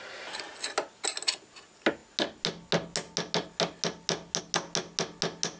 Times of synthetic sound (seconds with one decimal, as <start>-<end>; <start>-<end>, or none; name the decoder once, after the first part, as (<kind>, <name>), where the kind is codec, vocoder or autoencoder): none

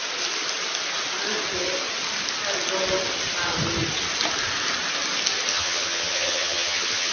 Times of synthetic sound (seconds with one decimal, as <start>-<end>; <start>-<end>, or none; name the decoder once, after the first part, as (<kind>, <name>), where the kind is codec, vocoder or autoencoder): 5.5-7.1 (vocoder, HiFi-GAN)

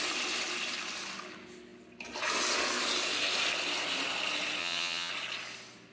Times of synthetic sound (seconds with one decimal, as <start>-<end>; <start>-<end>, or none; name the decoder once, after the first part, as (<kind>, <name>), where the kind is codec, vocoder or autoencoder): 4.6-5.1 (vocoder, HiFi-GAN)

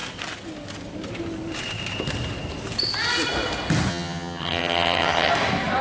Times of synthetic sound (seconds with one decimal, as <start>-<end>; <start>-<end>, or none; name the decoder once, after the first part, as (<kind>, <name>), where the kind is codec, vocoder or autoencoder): 3.9-5.3 (vocoder, HiFi-GAN)